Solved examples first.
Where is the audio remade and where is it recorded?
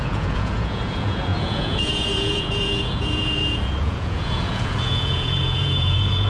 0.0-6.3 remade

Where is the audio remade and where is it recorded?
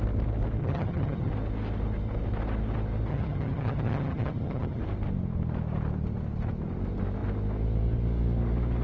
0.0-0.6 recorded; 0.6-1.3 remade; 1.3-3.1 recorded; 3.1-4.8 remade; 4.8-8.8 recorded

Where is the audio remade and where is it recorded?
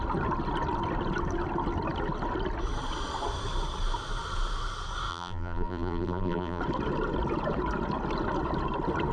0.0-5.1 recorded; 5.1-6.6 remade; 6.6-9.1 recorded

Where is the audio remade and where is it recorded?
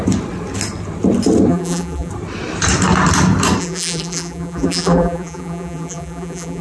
0.0-1.5 recorded; 1.5-2.1 remade; 2.1-3.6 recorded; 3.6-6.6 remade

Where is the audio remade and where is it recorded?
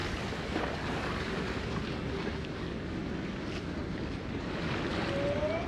0.0-3.0 remade; 3.0-3.6 recorded; 3.6-4.9 remade; 4.9-5.7 recorded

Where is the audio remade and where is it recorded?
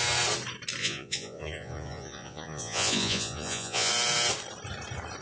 0.0-0.8 recorded; 0.8-3.9 remade; 3.9-5.2 recorded